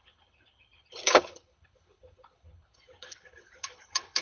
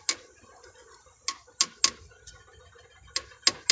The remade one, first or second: first